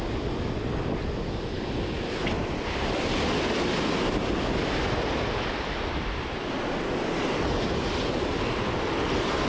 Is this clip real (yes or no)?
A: yes